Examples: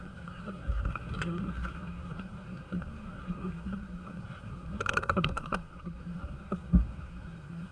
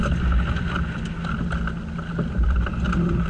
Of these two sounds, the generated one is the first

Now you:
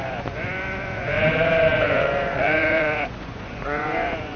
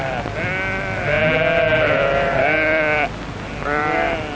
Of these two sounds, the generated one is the first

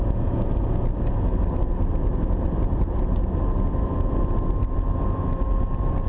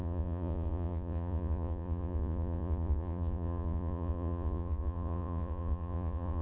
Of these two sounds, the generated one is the second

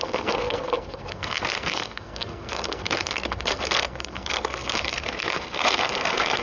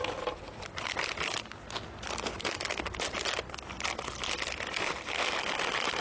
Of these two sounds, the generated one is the first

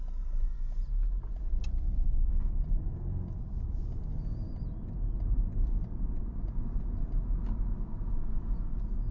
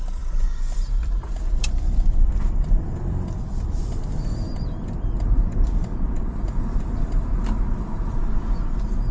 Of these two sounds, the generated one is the second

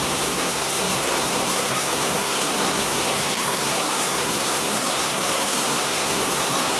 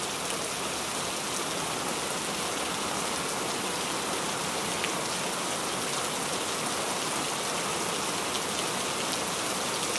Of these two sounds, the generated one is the first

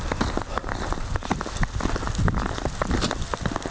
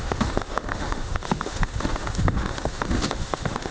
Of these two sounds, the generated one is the second